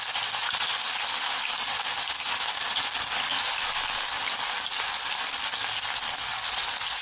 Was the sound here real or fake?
real